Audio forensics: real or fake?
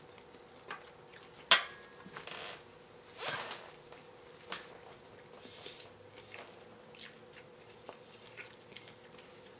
real